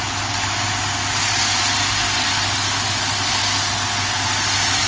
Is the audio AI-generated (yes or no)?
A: no